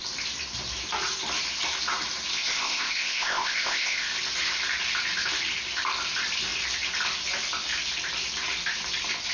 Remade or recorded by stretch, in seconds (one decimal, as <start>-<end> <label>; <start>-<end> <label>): 0.0-2.3 recorded; 2.3-4.2 remade; 4.2-9.3 recorded